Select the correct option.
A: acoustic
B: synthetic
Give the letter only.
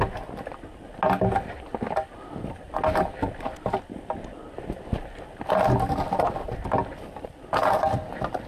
A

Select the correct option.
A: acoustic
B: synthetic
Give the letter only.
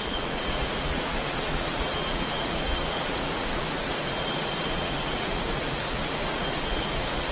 B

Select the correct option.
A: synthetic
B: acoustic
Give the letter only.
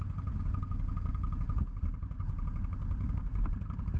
B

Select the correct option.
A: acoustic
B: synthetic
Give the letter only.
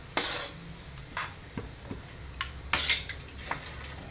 A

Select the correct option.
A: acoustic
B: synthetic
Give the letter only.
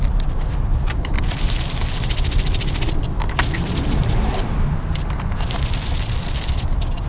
B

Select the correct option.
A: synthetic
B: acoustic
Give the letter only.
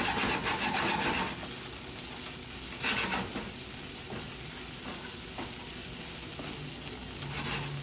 B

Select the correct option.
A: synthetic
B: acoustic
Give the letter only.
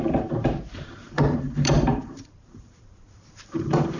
A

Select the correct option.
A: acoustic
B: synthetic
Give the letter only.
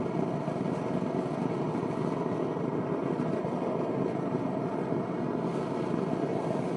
A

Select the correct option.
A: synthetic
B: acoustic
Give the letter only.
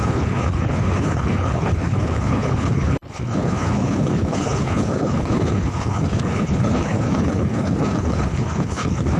A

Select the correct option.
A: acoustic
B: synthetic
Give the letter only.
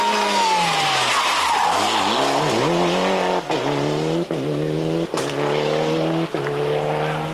A